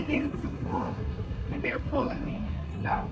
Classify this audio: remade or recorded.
remade